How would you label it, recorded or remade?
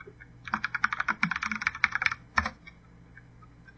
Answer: recorded